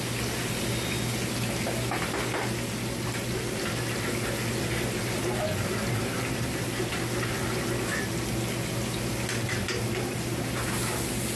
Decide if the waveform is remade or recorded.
recorded